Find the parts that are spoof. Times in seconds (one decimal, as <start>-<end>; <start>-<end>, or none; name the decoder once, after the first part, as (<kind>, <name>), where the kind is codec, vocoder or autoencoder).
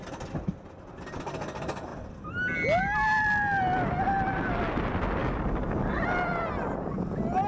5.2-5.8 (codec, DAC)